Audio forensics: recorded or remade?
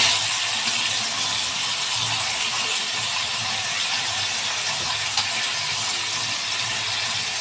recorded